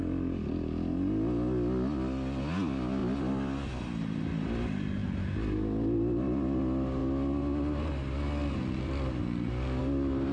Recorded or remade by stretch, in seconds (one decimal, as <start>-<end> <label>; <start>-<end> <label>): 0.0-3.0 recorded; 3.0-4.2 remade; 4.2-10.3 recorded